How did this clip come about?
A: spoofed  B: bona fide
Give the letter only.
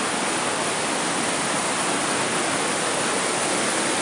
B